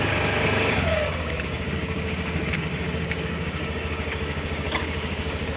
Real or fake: fake